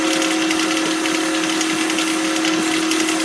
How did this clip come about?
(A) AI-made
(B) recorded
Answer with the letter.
B